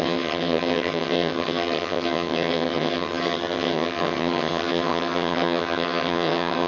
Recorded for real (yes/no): no